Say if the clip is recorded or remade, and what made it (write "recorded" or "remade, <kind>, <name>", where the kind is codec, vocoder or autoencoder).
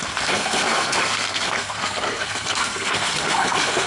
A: remade, codec, SNAC